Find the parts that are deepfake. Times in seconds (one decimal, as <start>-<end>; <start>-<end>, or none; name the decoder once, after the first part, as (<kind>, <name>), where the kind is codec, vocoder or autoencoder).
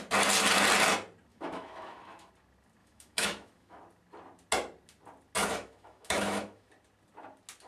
1.3-2.3 (autoencoder, DAC-VAE); 2.8-3.8; 5.4-6.7